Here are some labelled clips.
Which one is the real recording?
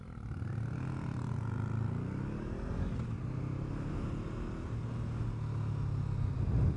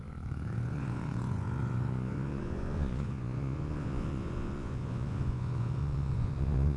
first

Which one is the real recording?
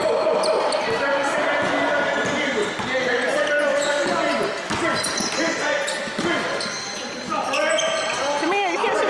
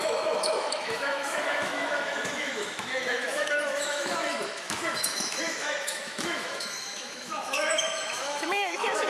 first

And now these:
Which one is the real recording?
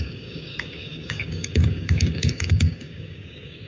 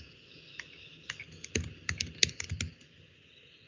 second